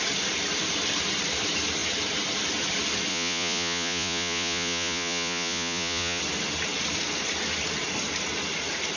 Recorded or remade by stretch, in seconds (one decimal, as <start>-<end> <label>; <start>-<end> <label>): 0.0-3.1 recorded; 3.1-6.2 remade; 6.2-9.0 recorded